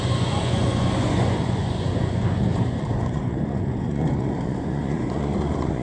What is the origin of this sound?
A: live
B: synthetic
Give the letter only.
B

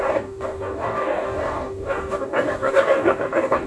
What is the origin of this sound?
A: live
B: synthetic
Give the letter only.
B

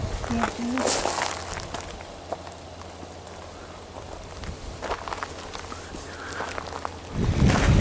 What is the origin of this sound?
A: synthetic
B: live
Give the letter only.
B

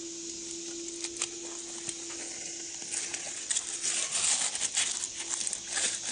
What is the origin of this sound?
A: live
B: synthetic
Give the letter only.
A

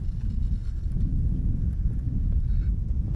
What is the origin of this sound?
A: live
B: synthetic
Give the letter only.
A